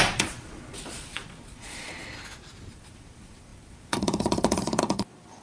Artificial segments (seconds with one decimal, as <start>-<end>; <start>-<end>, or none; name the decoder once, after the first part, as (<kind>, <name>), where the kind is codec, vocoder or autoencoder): 0.0-2.0 (vocoder, Vocos); 2.7-5.4